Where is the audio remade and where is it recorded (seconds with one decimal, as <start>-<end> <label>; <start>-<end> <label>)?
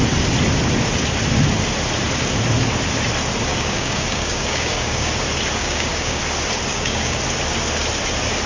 0.0-3.5 recorded; 3.5-5.1 remade; 5.1-5.6 recorded; 5.6-6.2 remade; 6.2-6.7 recorded; 6.7-7.2 remade; 7.2-8.5 recorded